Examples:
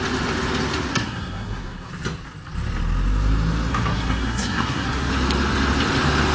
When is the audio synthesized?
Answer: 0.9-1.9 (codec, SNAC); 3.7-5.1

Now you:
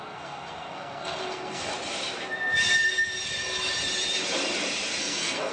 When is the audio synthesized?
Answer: 0.0-1.7 (codec, SNAC); 5.0-5.5